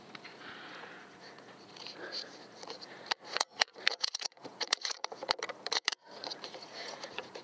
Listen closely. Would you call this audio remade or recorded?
remade